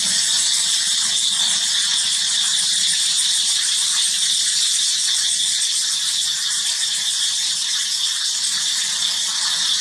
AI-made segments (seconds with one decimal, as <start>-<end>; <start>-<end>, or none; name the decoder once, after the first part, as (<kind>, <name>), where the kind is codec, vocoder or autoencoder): 1.9-3.9 (vocoder, BigVGAN v2); 6.3-7.8